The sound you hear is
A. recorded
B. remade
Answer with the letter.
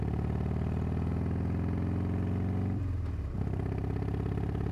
A